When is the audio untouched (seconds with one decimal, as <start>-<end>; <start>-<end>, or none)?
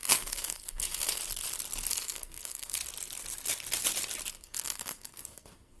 1.2-1.9; 2.8-4.3